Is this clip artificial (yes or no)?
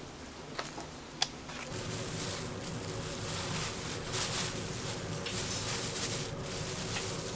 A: no